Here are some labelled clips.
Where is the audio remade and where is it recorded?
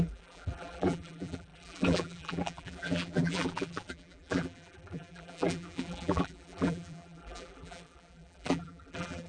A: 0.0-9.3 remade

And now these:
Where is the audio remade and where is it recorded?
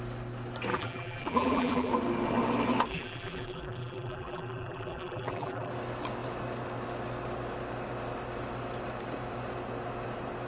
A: 0.0-0.7 recorded; 0.7-1.9 remade; 1.9-2.9 recorded; 2.9-5.7 remade; 5.7-10.5 recorded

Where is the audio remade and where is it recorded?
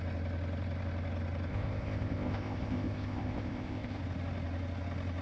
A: 0.0-1.5 recorded; 1.5-4.0 remade; 4.0-5.2 recorded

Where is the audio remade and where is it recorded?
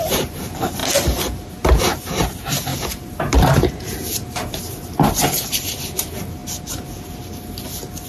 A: 0.0-0.8 remade; 0.8-1.5 recorded; 1.5-6.4 remade; 6.4-8.1 recorded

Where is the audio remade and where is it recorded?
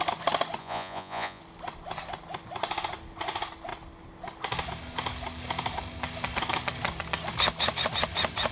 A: 0.0-0.6 recorded; 0.6-1.4 remade; 1.4-8.5 recorded